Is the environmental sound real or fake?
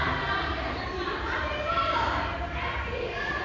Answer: fake